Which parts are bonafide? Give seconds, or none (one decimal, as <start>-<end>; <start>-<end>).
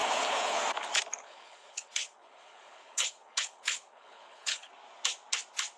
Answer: 0.6-1.2; 4.7-5.8